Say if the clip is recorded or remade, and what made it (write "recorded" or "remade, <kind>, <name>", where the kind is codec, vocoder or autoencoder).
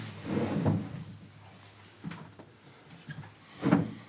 recorded